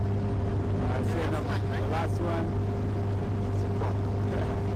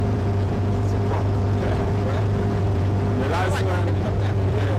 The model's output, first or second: second